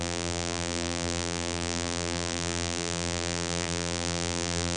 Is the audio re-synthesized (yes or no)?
yes